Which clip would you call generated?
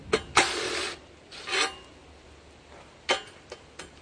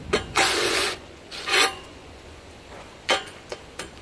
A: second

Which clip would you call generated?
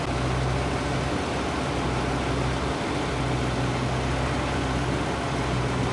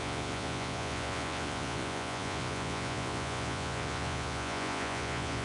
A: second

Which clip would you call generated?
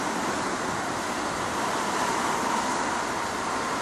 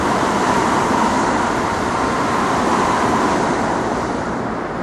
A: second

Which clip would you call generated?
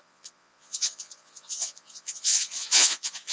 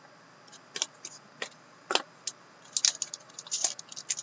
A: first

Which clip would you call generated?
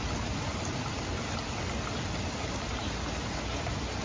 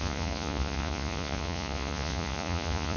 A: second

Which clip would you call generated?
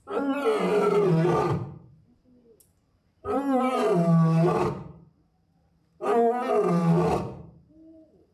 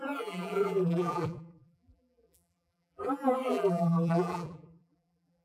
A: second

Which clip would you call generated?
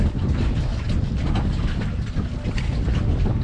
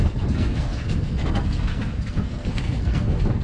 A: second